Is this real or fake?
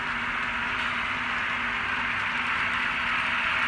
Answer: real